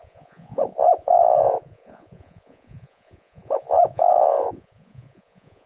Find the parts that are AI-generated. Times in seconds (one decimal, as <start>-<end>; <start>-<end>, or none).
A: 0.0-5.7